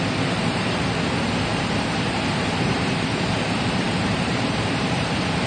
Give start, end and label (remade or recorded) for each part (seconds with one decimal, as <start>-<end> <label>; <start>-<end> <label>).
0.0-5.5 remade